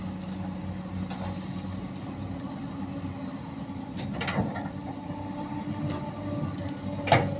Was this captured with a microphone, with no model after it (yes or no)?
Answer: yes